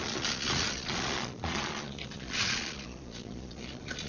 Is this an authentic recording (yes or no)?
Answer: no